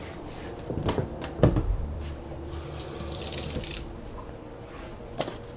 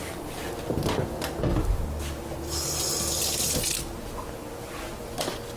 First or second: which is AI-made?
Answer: first